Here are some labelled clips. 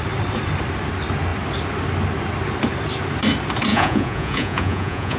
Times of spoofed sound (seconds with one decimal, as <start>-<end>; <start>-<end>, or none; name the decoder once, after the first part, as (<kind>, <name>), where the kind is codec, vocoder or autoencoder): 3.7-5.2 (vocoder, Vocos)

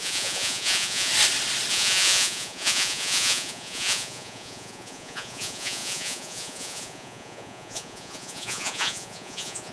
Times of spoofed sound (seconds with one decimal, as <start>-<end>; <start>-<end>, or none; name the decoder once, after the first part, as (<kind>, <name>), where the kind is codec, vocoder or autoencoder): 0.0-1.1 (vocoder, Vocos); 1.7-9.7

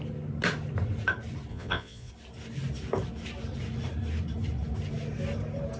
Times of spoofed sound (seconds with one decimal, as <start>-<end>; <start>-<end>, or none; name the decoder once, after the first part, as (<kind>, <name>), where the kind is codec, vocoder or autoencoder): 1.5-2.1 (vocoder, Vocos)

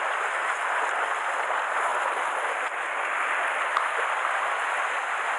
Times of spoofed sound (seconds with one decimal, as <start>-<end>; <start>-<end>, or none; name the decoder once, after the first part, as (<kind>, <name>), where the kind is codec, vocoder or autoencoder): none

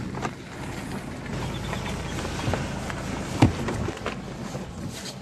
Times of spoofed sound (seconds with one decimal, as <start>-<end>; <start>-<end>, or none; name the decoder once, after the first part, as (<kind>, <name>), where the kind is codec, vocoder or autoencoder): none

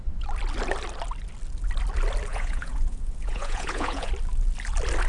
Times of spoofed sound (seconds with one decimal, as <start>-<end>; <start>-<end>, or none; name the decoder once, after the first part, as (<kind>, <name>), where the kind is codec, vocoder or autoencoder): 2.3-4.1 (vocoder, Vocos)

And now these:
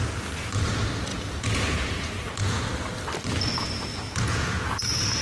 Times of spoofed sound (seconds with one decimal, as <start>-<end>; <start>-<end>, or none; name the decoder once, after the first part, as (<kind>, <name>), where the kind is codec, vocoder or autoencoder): 1.1-2.6 (vocoder, Vocos); 3.9-4.8